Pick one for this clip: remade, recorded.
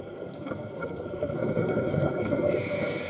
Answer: remade